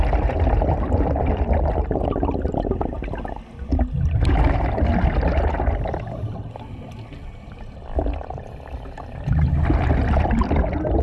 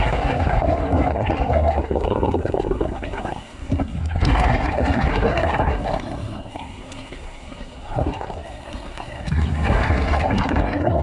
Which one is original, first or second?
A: first